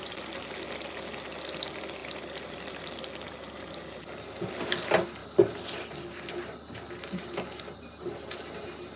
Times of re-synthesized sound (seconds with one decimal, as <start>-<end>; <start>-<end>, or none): none